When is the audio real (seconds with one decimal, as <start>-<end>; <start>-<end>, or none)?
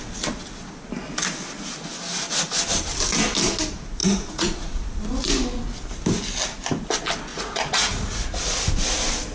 0.0-4.0; 5.0-7.3; 8.6-9.3